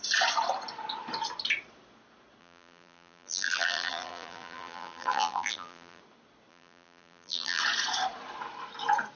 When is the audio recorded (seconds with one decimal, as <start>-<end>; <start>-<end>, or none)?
0.0-2.4; 6.0-6.5; 7.6-9.2